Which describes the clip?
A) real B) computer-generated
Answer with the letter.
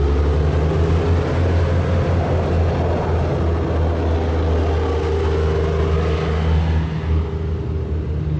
A